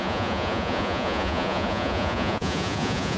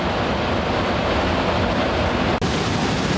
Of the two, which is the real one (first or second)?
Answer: second